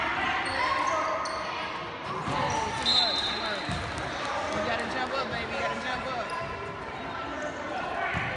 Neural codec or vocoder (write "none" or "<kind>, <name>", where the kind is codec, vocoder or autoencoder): none